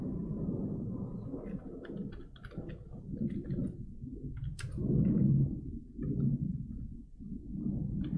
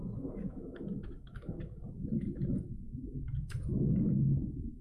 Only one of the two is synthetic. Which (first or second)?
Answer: second